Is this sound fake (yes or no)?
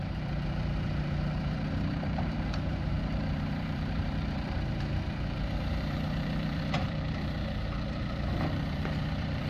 yes